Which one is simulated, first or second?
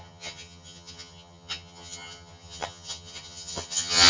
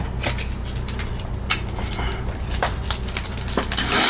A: first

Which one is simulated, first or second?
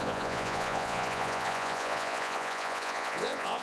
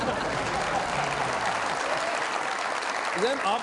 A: first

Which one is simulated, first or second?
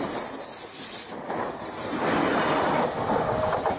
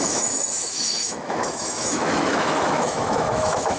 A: second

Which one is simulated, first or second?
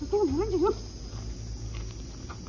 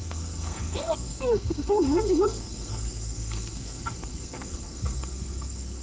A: second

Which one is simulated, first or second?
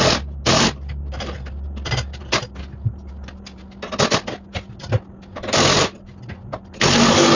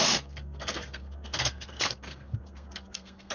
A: second